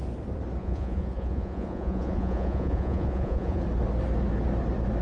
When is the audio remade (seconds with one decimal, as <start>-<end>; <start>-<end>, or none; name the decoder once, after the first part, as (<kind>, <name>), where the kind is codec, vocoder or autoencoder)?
0.6-3.6 (vocoder, Vocos)